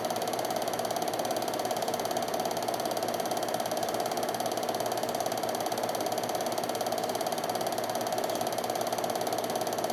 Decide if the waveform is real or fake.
real